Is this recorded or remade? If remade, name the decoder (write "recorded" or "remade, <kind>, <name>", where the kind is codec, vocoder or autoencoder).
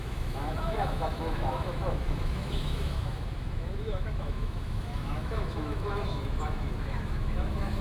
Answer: remade, autoencoder, DAC-VAE